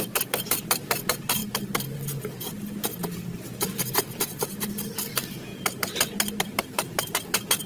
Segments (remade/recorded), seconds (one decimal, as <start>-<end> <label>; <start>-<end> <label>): 0.0-5.5 remade; 5.5-7.0 recorded; 7.0-7.7 remade